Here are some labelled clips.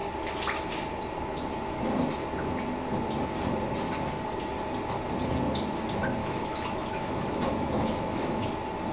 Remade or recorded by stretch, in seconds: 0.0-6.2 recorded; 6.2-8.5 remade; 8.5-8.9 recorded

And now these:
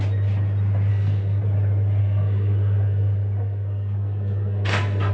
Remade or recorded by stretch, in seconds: 0.0-0.9 recorded; 0.9-1.4 remade; 1.4-2.0 recorded; 2.0-5.1 remade